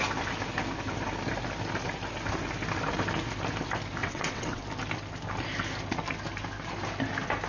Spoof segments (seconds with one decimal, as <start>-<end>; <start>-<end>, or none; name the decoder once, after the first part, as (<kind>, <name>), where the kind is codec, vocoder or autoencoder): 4.0-4.6 (vocoder, WaveNeXt)